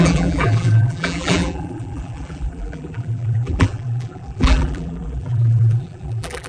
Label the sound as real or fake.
fake